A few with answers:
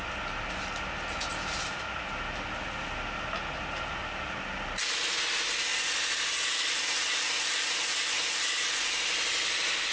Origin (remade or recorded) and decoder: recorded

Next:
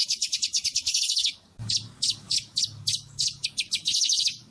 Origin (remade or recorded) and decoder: remade, codec, DAC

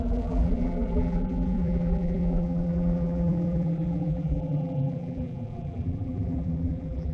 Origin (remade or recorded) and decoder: remade, vocoder, BigVGAN v2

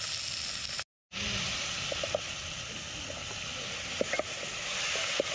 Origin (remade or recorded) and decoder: recorded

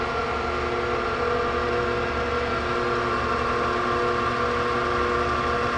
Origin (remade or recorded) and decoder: recorded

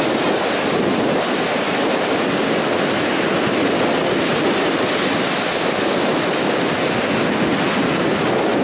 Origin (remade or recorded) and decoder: recorded